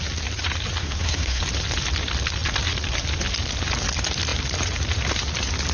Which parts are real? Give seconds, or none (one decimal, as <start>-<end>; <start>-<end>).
0.0-0.8; 1.4-5.7